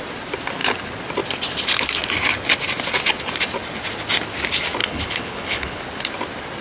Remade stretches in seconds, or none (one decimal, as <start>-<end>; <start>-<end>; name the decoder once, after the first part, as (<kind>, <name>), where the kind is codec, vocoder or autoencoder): 4.8-5.8 (codec, HILCodec)